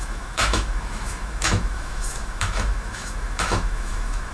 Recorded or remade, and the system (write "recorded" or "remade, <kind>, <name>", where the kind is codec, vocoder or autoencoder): remade, autoencoder, DAC-VAE